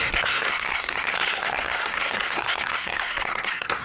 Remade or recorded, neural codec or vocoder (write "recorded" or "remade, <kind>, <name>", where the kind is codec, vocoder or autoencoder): remade, codec, SNAC